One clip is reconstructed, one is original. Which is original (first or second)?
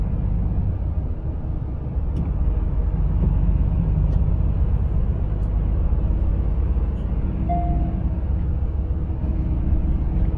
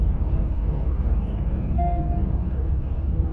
first